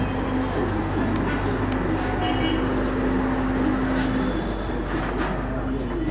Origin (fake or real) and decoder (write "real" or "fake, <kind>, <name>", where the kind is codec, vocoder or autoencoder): real